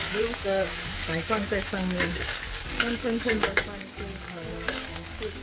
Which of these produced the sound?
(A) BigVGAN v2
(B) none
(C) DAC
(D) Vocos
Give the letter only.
C